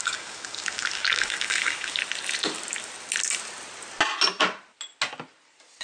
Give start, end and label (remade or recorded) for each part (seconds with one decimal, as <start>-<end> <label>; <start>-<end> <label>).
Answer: 0.0-2.0 remade; 2.0-5.8 recorded